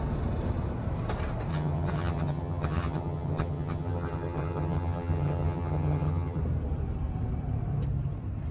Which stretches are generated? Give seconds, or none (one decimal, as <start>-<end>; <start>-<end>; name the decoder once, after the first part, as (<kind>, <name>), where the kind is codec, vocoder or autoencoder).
1.5-6.4 (vocoder, HiFi-GAN)